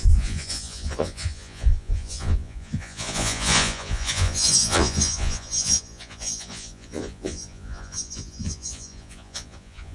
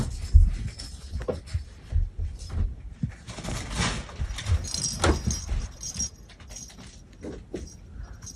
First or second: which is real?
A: second